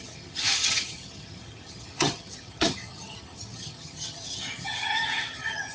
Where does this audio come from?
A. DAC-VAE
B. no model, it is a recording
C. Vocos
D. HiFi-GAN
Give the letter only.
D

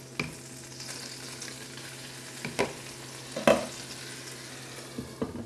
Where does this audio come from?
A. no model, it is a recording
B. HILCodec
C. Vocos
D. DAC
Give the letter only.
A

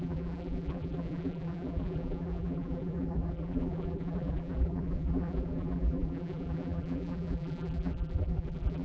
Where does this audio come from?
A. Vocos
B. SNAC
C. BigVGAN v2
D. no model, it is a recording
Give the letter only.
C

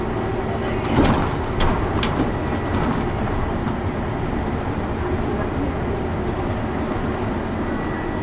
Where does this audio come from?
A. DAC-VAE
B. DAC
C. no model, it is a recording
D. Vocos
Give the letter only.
C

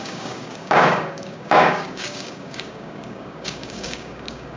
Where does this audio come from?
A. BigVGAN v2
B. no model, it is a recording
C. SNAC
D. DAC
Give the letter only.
D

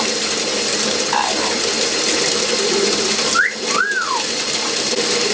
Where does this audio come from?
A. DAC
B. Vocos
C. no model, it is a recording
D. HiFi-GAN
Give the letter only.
C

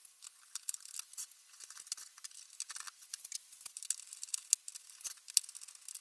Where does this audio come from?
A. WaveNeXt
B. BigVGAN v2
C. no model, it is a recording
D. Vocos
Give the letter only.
C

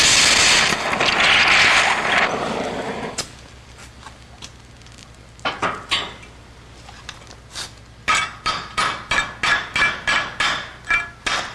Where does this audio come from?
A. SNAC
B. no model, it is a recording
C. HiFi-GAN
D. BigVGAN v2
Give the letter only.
B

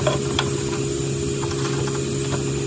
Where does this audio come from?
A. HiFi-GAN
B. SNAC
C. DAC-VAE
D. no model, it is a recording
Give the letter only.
D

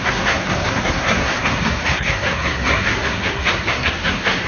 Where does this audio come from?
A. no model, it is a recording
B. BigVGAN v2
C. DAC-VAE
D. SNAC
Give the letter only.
D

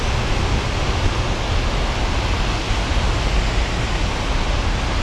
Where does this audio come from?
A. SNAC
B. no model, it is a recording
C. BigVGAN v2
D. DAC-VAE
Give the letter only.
B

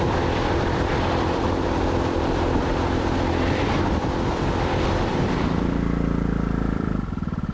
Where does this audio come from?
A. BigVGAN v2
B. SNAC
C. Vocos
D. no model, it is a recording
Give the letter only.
A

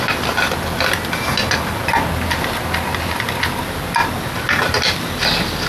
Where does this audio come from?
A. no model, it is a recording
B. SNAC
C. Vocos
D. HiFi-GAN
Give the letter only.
A